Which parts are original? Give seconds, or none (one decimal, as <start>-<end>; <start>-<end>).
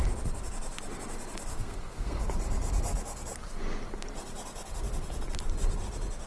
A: 0.0-1.5; 2.2-6.3